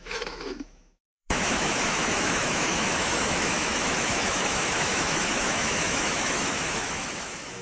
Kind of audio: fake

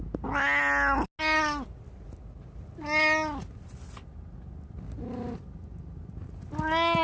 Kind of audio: real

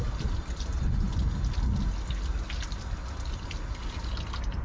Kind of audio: real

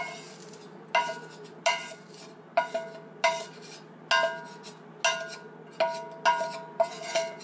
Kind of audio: real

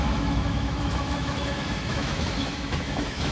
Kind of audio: fake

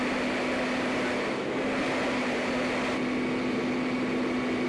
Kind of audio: real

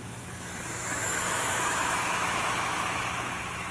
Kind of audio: fake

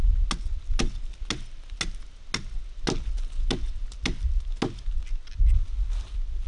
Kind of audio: real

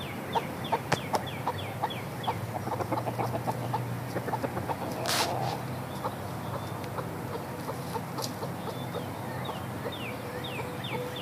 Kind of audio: real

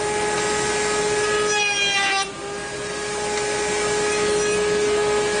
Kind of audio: real